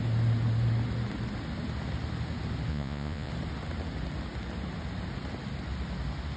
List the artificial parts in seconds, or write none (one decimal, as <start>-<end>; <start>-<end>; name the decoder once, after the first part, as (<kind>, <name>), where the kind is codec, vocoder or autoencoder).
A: 2.7-3.3 (vocoder, Vocos)